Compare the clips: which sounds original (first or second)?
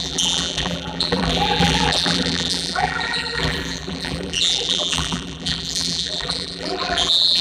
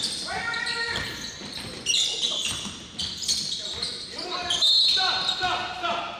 second